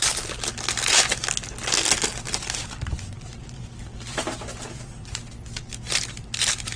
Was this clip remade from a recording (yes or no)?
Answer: no